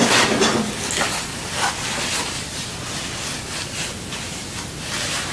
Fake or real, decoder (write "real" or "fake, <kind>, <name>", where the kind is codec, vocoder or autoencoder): real